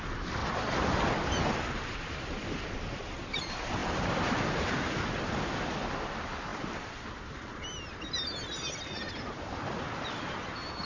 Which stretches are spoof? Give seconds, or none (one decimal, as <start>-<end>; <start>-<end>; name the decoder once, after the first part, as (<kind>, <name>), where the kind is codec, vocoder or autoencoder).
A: none